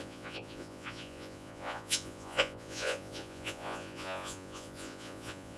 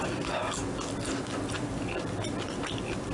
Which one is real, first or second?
second